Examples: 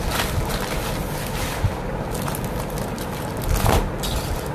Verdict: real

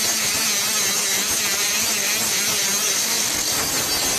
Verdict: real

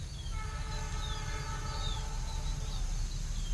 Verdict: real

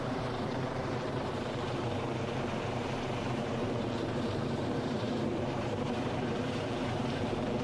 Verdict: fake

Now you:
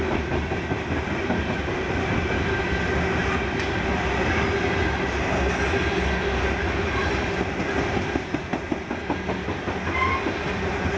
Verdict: real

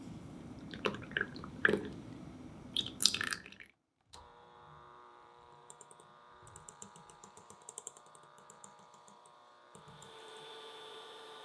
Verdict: fake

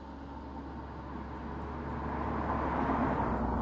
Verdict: real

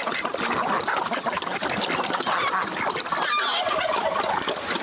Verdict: real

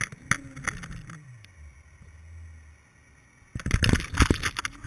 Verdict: real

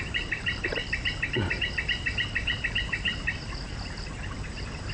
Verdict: fake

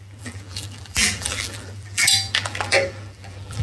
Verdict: fake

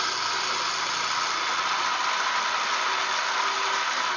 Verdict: real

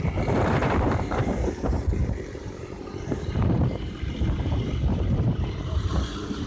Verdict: fake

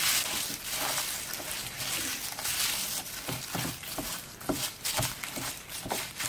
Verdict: fake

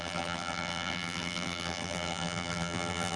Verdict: fake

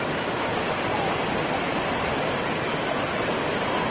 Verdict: fake